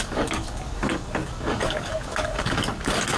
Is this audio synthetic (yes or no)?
yes